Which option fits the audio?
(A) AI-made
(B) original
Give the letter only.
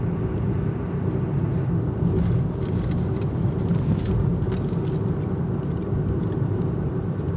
B